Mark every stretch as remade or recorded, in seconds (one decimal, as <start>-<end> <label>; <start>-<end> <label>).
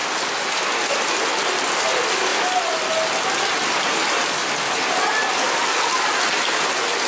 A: 0.0-7.1 recorded